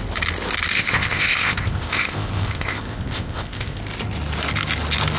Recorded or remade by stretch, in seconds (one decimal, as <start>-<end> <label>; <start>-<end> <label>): 0.0-0.7 recorded; 0.7-3.8 remade; 3.8-5.2 recorded